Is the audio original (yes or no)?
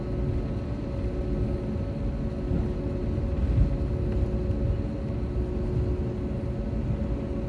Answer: yes